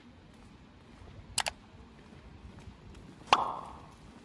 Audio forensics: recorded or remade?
recorded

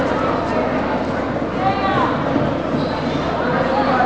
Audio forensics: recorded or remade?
recorded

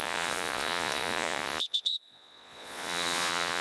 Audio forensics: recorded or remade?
remade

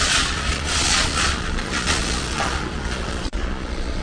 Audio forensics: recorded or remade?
remade